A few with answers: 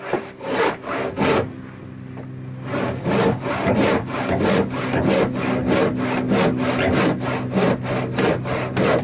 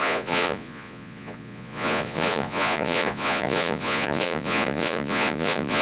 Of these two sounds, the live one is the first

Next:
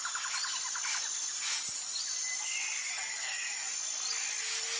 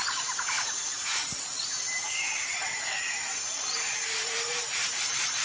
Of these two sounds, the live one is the first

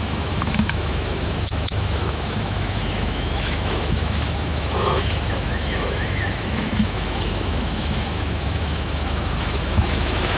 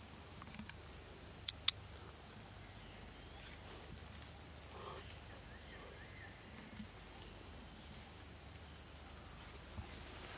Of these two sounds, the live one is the second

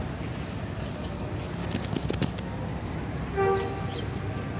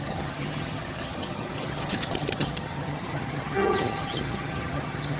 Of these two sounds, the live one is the first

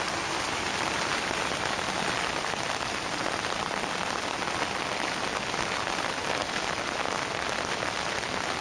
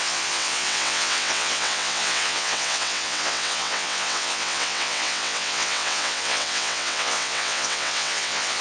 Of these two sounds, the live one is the first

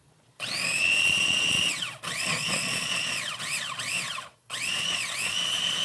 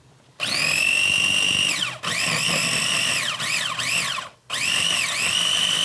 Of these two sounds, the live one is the second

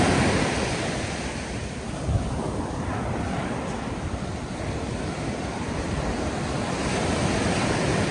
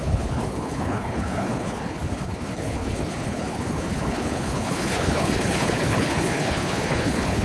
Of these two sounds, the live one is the first